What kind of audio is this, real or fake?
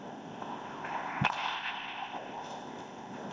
fake